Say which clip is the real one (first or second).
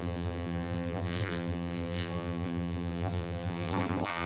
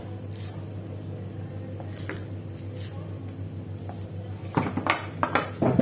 second